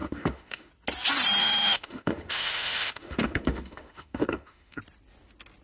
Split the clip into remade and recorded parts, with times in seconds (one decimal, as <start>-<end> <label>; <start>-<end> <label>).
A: 0.0-0.7 remade; 0.7-1.4 recorded; 1.4-4.8 remade; 4.8-5.6 recorded